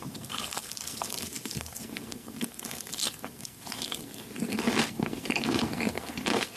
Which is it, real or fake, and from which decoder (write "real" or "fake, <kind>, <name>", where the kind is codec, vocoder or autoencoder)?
fake, codec, SNAC